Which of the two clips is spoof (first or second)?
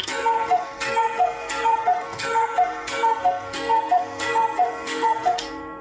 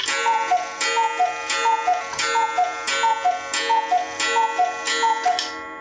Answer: first